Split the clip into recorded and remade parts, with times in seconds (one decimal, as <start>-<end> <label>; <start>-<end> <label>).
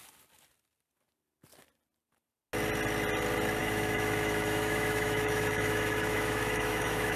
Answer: 0.0-3.6 recorded; 3.6-7.2 remade